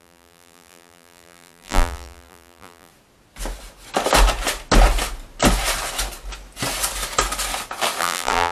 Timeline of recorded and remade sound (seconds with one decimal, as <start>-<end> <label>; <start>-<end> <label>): 0.0-2.9 remade; 2.9-8.0 recorded; 8.0-8.5 remade

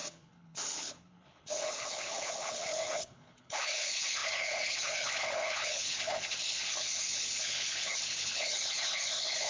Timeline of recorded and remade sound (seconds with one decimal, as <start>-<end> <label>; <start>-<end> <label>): 0.0-9.5 remade

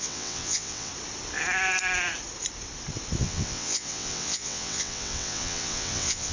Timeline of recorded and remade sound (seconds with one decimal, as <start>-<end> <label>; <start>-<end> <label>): 0.0-0.9 remade; 0.9-3.2 recorded; 3.2-6.3 remade